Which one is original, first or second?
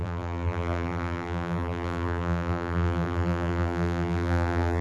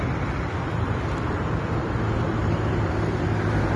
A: second